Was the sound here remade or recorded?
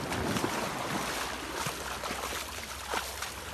recorded